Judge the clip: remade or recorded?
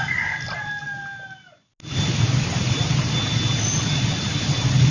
recorded